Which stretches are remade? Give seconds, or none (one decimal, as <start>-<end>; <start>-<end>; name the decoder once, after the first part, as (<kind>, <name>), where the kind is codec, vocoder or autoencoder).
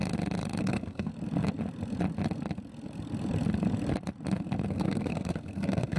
0.6-1.1 (codec, SNAC); 4.7-6.0